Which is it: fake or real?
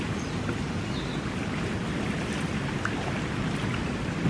real